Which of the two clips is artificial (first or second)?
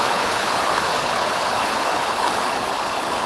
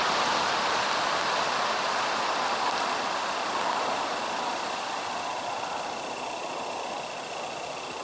first